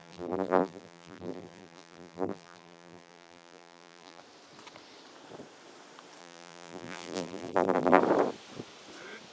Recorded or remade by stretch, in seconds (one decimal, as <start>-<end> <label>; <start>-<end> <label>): 0.0-4.2 remade; 4.2-6.2 recorded; 6.2-8.0 remade; 8.0-9.3 recorded